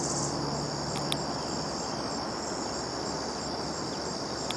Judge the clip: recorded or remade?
recorded